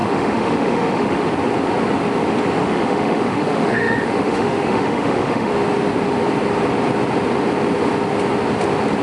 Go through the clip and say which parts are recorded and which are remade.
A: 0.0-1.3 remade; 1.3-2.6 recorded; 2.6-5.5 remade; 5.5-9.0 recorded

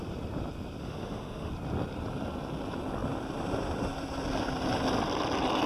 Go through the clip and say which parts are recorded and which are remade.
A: 0.0-0.8 recorded; 0.8-1.5 remade; 1.5-5.7 recorded